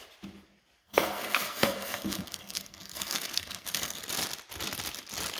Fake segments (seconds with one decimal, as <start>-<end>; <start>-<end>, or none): 0.8-4.0